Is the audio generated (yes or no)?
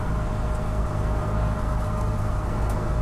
yes